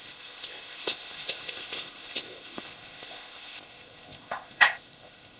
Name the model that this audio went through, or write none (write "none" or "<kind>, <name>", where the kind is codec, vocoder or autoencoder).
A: codec, ZipCodec